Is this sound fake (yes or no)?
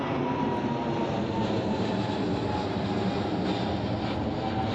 no